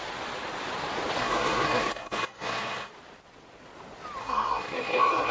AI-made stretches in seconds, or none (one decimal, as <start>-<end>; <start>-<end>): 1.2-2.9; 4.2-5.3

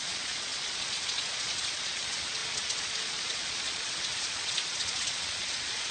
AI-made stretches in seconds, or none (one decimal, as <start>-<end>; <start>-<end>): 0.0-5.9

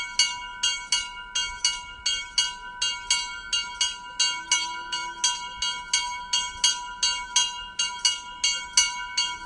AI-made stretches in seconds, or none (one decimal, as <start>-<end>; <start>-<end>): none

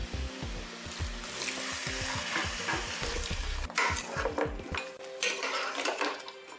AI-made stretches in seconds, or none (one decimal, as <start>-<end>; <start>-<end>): none

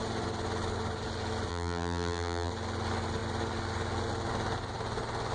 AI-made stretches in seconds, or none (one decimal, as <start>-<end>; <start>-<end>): 1.5-2.5